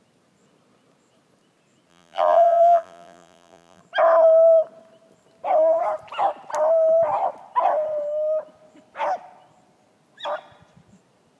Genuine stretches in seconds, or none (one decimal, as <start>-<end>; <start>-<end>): 0.0-1.9; 3.8-11.4

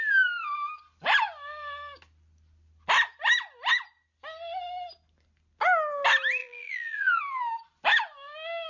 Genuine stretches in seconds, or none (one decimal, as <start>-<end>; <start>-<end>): 0.0-6.4; 7.2-8.7